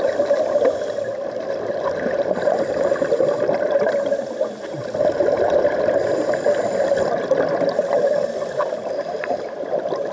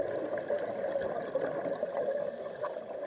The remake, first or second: first